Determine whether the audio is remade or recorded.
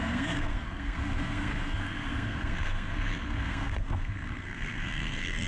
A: remade